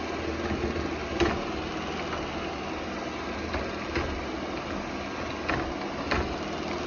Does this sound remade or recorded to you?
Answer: recorded